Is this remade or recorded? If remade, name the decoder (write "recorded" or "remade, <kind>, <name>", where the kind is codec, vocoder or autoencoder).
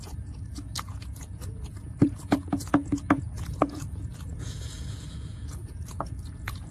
remade, vocoder, Vocos